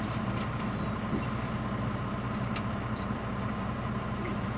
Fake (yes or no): no